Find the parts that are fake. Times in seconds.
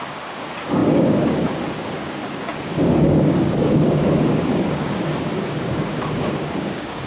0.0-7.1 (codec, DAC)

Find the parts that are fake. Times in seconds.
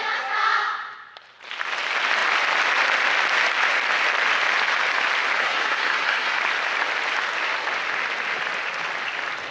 5.4-6.4 (codec, SNAC)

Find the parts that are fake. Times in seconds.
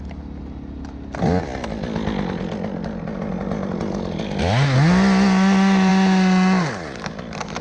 none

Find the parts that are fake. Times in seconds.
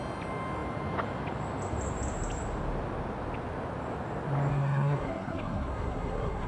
4.5-6.5 (codec, SNAC)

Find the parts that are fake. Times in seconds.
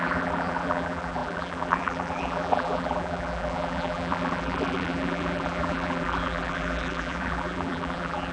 0.0-8.3 (vocoder, BigVGAN v2)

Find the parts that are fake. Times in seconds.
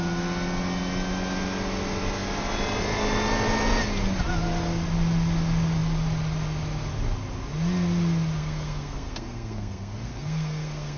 8.4-11.0 (codec, SNAC)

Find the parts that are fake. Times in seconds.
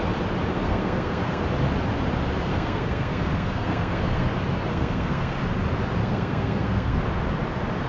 0.5-1.5 (codec, SNAC); 2.5-4.3; 4.7-5.4; 6.0-7.0